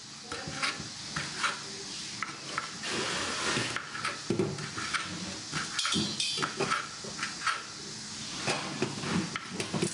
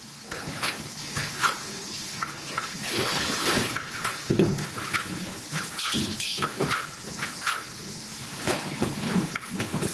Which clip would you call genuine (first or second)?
first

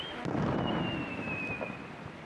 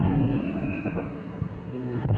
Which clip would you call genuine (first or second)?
first